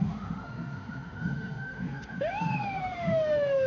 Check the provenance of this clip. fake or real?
fake